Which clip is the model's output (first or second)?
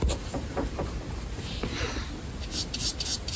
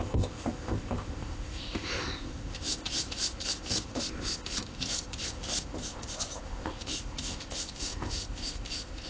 second